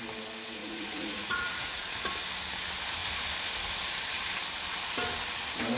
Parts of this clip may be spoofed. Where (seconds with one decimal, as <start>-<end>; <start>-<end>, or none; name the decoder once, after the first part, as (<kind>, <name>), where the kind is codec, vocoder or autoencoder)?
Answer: 0.6-1.8 (vocoder, Vocos)